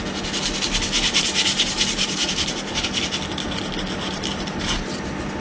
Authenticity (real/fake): real